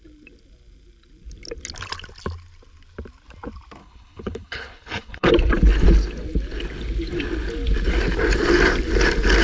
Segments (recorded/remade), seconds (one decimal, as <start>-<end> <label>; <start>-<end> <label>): 0.0-3.8 recorded; 3.8-5.3 remade; 5.3-9.4 recorded